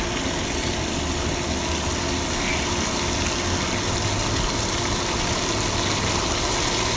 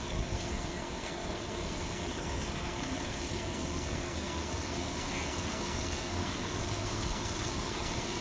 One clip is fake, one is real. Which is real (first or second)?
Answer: first